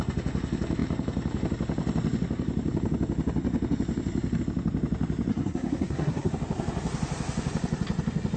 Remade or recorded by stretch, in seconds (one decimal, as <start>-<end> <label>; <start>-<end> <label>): 0.0-5.3 recorded; 5.3-6.3 remade; 6.3-8.4 recorded